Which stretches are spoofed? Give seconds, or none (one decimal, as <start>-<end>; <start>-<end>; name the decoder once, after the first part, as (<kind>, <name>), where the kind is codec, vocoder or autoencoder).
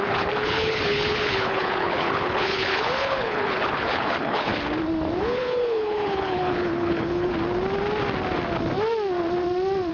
0.0-4.5 (codec, HILCodec); 5.2-7.3